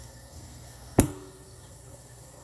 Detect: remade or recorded remade